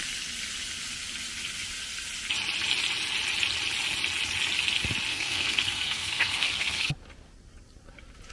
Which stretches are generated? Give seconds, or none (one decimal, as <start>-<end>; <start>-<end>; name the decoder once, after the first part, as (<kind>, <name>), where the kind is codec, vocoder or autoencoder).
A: 5.1-6.9 (codec, SNAC)